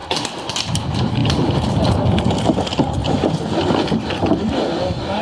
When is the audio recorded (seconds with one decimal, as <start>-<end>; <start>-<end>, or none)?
0.0-5.2